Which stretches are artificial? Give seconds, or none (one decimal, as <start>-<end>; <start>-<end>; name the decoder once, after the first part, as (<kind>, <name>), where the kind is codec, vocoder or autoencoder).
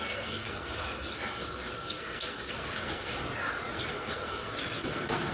0.0-3.1 (codec, SNAC); 3.7-5.3